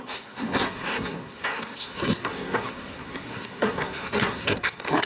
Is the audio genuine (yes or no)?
no